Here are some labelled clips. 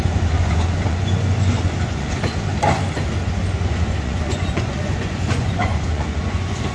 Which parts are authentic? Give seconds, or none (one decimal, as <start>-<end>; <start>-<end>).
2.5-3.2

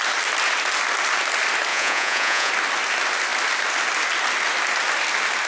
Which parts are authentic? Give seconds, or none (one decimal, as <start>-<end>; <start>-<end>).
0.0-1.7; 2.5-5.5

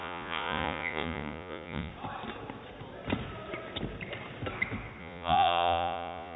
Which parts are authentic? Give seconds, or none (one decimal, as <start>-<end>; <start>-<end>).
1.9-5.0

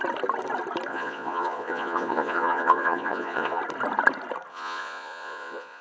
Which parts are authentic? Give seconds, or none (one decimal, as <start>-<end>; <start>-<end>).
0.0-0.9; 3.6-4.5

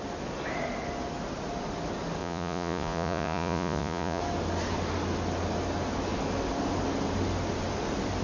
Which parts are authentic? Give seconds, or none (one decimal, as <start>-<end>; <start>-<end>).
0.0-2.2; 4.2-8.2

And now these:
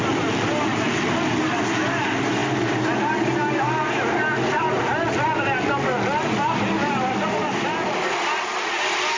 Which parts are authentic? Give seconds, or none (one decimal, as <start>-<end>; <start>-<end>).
0.0-9.2